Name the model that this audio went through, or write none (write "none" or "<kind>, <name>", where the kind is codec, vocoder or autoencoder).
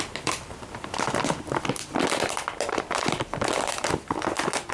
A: none